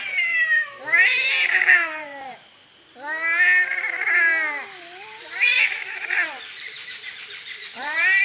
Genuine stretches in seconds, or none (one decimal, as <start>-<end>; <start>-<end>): 2.6-5.2